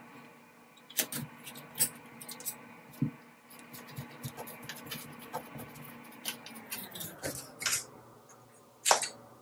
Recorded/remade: recorded